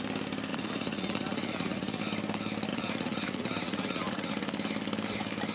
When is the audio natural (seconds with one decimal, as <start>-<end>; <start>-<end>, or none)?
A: 0.0-0.5; 2.0-2.7; 4.3-5.5